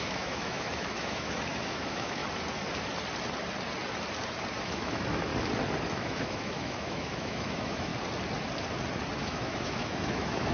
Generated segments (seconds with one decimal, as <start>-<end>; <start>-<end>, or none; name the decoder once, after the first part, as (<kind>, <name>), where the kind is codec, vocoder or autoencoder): 0.0-2.2 (autoencoder, DAC-VAE); 4.6-5.3; 5.8-7.9; 9.2-10.5